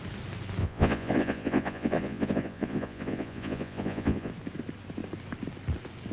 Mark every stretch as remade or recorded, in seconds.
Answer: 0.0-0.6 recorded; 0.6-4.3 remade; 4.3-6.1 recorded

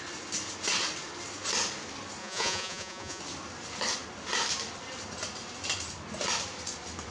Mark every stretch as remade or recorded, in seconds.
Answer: 0.0-2.2 recorded; 2.2-3.2 remade; 3.2-7.1 recorded

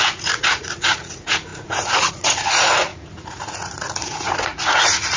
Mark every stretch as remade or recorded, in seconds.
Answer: 0.0-5.2 remade

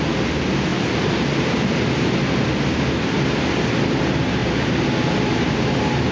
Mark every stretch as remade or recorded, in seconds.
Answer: 0.0-6.1 recorded

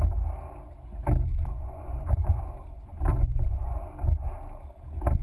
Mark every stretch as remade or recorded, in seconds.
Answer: 0.0-1.5 recorded; 1.5-2.4 remade; 2.4-3.1 recorded; 3.1-3.8 remade; 3.8-5.2 recorded

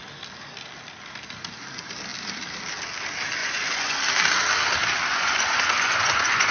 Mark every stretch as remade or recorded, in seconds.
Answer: 0.0-3.4 recorded; 3.4-4.0 remade; 4.0-5.1 recorded; 5.1-6.5 remade

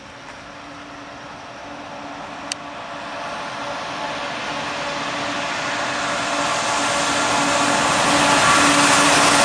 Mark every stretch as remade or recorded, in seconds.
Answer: 0.0-9.4 recorded

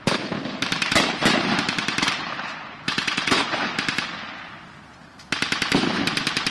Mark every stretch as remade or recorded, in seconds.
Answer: 0.0-2.5 recorded; 2.5-3.7 remade; 3.7-6.5 recorded